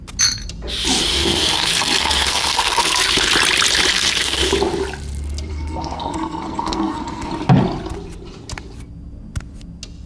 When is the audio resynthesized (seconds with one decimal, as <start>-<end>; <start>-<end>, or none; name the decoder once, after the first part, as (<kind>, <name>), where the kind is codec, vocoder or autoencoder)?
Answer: 1.1-3.3 (codec, SNAC); 3.9-4.5; 5.5-7.3